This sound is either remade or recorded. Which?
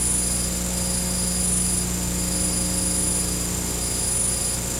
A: recorded